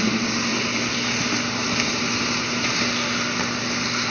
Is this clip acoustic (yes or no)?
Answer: yes